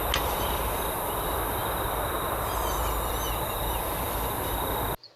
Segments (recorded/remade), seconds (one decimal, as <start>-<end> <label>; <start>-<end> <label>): 0.0-5.2 recorded